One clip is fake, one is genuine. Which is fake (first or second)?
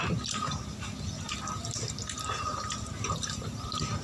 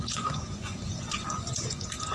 second